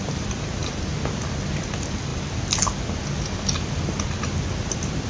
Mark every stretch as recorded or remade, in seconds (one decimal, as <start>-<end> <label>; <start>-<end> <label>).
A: 0.0-5.1 recorded